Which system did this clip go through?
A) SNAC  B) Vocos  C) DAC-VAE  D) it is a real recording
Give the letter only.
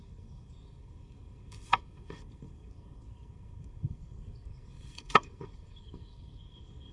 A